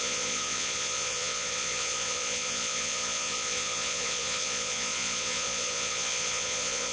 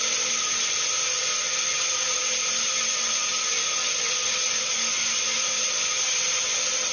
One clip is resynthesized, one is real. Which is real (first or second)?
second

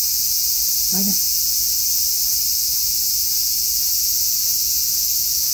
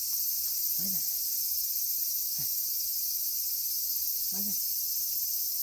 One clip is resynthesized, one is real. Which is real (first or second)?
second